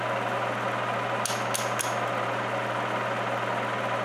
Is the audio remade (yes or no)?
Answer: no